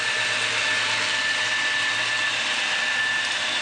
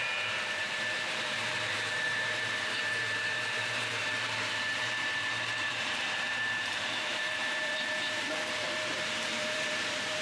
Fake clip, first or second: second